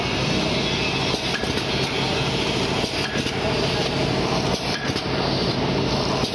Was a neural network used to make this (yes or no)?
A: no